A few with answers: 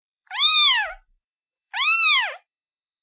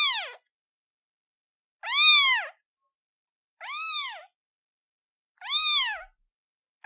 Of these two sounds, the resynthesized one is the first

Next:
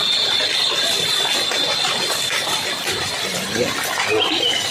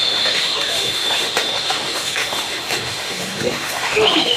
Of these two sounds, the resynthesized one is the second